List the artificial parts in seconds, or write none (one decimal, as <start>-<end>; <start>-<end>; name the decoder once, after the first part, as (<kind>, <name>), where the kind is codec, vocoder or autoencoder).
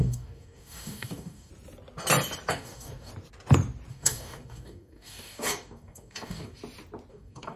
0.0-1.5 (codec, DAC); 2.5-3.1; 3.9-6.6; 7.1-7.6